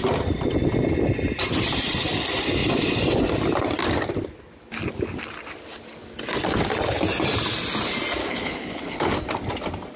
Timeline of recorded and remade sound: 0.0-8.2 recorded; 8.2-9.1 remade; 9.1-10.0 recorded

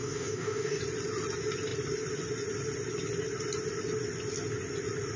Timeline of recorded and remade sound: 0.0-0.8 remade; 0.8-5.2 recorded

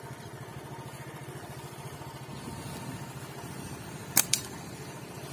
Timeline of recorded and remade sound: 0.0-0.5 remade; 0.5-1.0 recorded; 1.0-2.3 remade; 2.3-3.1 recorded; 3.1-5.3 remade

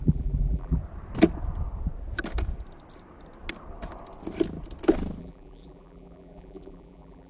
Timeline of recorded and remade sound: 0.0-0.8 remade; 0.8-5.2 recorded; 5.2-7.3 remade

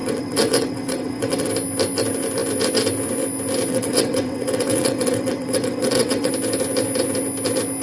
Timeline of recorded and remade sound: 0.0-1.5 remade; 1.5-3.7 recorded; 3.7-6.3 remade; 6.3-7.8 recorded

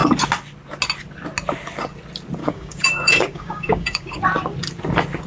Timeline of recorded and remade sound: 0.0-2.4 recorded; 2.4-4.2 remade; 4.2-5.3 recorded

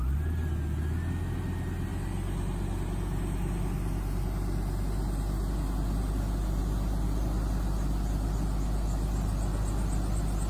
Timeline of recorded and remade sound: 0.0-10.5 recorded